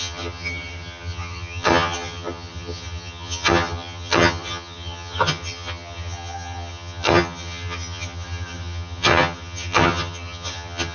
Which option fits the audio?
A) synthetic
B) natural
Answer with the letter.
A